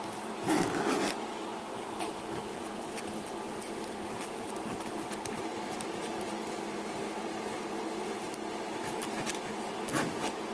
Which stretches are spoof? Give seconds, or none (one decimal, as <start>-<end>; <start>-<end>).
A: none